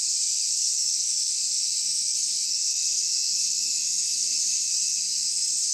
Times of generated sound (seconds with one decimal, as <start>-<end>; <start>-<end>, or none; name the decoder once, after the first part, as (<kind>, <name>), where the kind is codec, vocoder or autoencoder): 0.0-5.7 (codec, SNAC)